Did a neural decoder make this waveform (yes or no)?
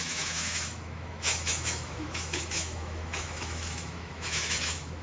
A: yes